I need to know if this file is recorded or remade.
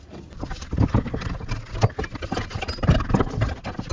recorded